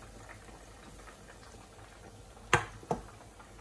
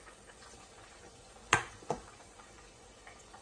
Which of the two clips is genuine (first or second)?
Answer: first